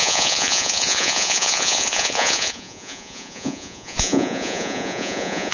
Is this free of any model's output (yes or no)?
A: no